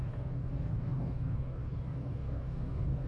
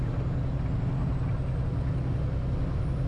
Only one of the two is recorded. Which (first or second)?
second